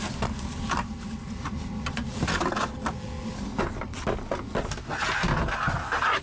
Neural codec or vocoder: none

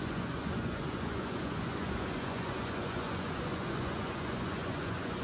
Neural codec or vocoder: vocoder, Vocos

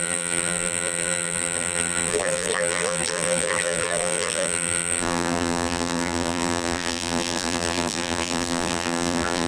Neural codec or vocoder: vocoder, BigVGAN v2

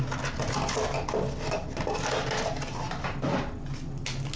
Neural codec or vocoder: none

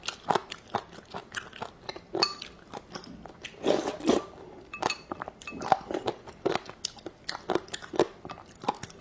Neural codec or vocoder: none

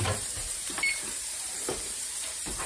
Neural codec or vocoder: vocoder, BigVGAN v2